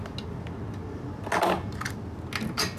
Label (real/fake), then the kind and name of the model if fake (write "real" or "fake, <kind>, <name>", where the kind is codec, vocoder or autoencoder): real